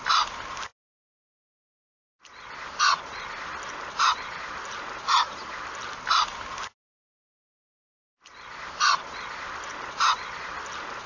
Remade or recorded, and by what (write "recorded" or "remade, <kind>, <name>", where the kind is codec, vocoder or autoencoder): recorded